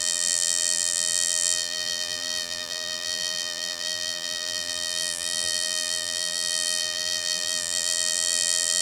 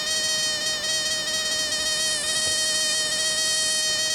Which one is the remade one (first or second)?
first